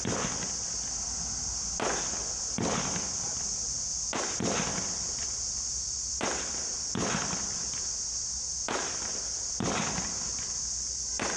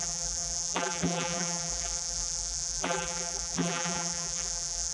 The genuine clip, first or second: first